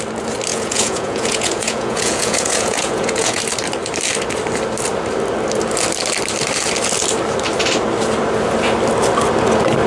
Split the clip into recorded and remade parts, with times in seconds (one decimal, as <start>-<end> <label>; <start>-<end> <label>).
0.0-0.5 recorded; 0.5-3.4 remade; 3.4-9.9 recorded